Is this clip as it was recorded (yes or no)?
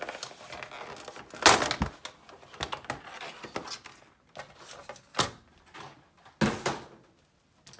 yes